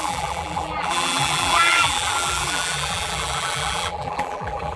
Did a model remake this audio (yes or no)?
yes